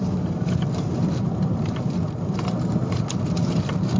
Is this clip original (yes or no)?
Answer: no